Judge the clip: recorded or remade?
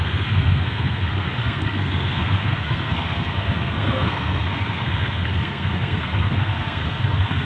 remade